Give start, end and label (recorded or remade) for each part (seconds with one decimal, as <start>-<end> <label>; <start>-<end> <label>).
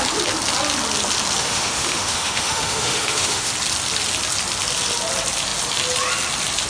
0.0-1.4 recorded; 1.4-3.5 remade; 3.5-6.7 recorded